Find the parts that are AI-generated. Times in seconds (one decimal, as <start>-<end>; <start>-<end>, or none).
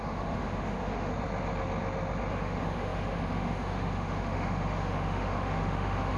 0.0-1.1; 2.3-6.2